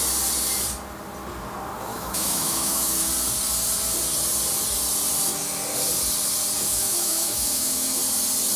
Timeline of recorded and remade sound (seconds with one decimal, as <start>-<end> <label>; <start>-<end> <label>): 0.0-1.9 recorded; 1.9-3.1 remade; 3.1-6.7 recorded; 6.7-8.0 remade; 8.0-8.6 recorded